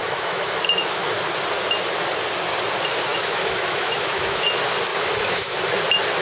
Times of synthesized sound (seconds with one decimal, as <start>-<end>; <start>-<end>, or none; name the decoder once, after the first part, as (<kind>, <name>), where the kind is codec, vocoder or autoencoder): 0.0-1.1 (autoencoder, DAC-VAE); 3.1-4.4; 4.9-5.6